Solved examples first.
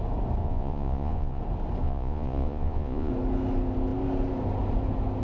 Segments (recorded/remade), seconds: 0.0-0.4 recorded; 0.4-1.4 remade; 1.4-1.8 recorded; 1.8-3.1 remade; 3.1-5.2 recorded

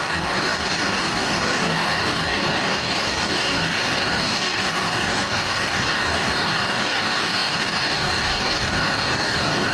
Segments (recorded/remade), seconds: 0.0-9.7 remade